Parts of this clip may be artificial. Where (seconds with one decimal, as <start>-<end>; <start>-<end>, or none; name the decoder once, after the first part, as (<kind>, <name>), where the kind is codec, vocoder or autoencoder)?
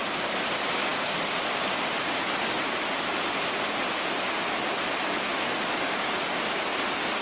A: none